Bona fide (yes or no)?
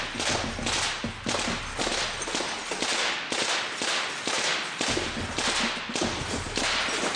yes